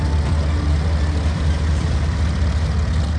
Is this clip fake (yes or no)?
no